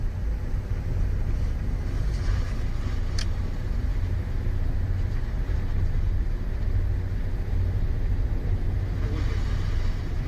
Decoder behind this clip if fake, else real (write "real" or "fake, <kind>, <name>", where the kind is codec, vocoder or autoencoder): real